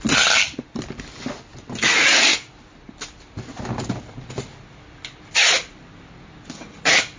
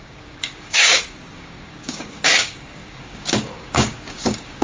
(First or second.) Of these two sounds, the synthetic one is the second